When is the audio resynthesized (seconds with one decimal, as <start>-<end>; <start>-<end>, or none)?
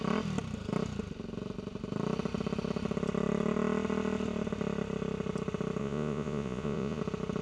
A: 5.8-7.0